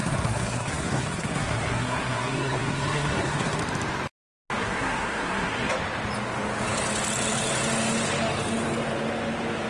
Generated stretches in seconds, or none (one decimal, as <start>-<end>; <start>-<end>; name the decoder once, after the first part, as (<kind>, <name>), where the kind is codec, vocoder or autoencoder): 0.0-3.6 (codec, SNAC); 4.6-5.7